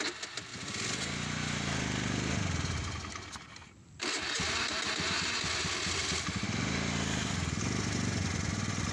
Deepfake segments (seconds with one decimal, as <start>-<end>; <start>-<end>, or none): none